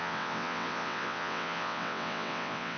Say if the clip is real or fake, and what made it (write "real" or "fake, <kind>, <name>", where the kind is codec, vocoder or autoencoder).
fake, vocoder, WaveNeXt